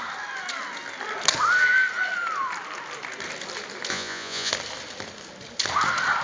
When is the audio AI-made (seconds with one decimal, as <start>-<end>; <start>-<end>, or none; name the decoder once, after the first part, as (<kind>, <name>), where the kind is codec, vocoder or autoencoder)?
3.9-4.5 (vocoder, Vocos)